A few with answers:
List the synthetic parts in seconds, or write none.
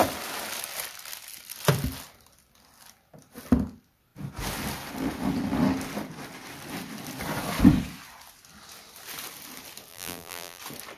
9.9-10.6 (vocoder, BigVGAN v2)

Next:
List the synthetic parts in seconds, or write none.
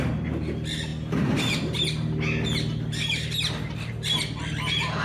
none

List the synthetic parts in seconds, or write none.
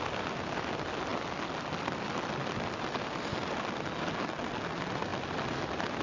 none